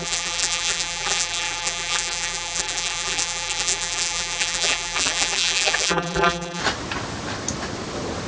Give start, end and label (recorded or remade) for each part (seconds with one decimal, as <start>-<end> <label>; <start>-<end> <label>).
0.0-6.6 remade; 6.6-8.3 recorded